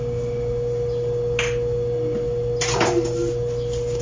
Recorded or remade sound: recorded